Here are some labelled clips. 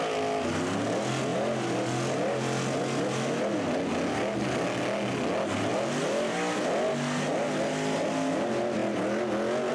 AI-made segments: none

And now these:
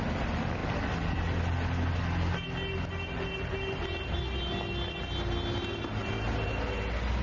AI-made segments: none

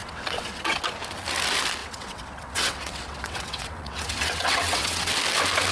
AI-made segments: 0.0-0.8 (vocoder, WaveNeXt); 1.8-5.1

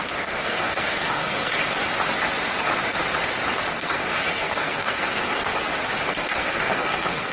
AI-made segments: 0.0-1.6 (codec, SNAC); 3.7-5.5; 6.1-7.3

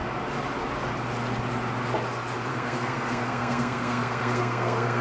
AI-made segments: 2.5-5.0 (codec, SNAC)

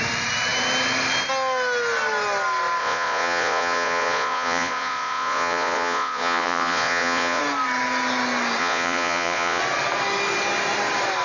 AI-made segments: 2.8-7.4 (vocoder, Vocos); 8.6-9.6

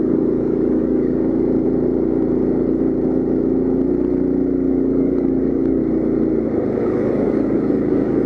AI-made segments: 0.0-1.2 (codec, DAC); 4.7-5.8; 6.8-8.3